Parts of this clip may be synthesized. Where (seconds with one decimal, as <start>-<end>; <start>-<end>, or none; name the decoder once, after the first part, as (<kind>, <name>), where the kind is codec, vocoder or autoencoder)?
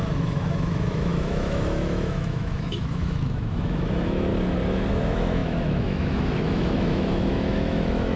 0.0-4.3 (autoencoder, DAC-VAE); 4.9-8.2